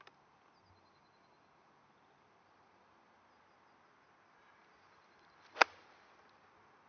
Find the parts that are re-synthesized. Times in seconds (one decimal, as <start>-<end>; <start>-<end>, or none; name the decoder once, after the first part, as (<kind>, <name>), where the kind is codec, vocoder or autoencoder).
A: none